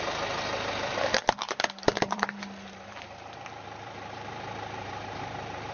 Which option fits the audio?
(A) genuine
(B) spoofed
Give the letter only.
B